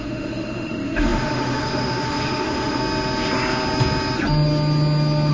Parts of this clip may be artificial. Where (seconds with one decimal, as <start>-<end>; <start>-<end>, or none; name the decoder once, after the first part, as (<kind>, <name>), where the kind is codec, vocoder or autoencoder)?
0.0-2.8 (autoencoder, DAC-VAE)